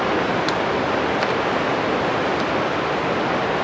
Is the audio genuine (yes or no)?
yes